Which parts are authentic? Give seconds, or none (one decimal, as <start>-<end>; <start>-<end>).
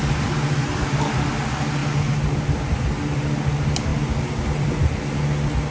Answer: 0.0-5.7